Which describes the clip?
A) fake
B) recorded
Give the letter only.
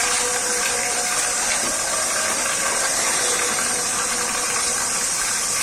B